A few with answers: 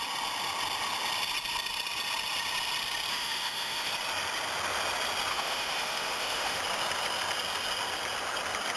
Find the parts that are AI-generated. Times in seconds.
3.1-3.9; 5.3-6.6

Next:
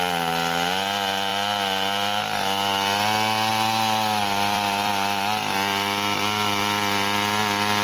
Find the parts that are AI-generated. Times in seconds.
4.2-4.9

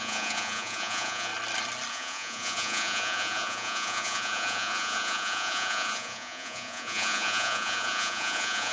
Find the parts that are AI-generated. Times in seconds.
0.0-1.3; 1.9-8.7

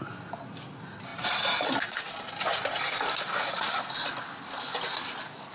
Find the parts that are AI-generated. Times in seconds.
1.1-2.0

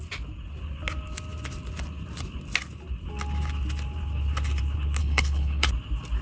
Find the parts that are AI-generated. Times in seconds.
5.0-5.7